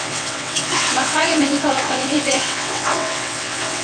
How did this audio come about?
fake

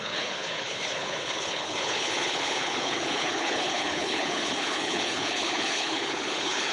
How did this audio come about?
fake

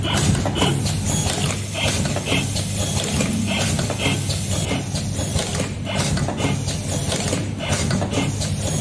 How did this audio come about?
real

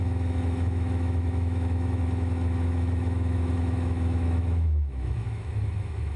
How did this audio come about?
fake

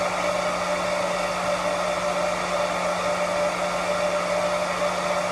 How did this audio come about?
real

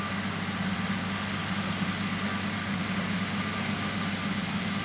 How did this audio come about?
real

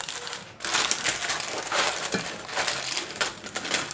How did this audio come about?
real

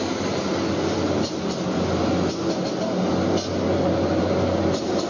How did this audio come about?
real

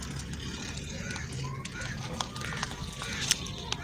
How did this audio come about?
real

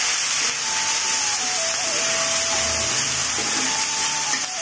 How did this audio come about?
real